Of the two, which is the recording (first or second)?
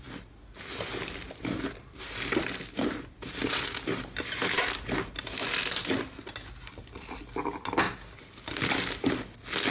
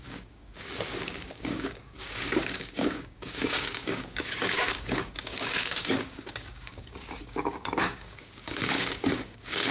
first